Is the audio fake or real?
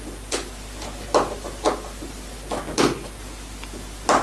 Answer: real